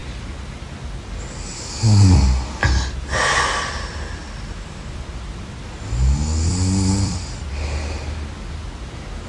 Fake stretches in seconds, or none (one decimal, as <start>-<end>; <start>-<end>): 4.2-5.6; 6.5-7.5